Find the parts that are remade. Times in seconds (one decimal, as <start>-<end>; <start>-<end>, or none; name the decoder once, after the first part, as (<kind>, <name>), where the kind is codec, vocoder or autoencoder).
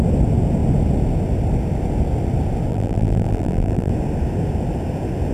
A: 2.7-3.9 (vocoder, BigVGAN v2)